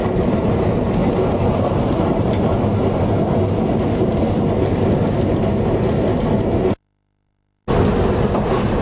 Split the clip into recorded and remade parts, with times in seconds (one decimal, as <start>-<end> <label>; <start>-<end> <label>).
0.0-2.5 remade; 2.5-8.8 recorded